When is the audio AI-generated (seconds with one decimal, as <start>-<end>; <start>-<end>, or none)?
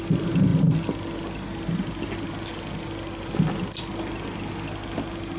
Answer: none